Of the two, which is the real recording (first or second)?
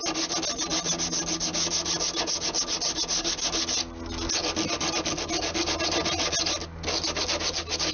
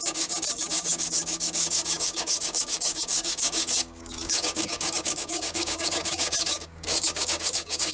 first